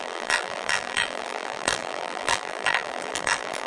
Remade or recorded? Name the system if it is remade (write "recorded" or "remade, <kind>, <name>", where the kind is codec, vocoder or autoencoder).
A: remade, vocoder, BigVGAN v2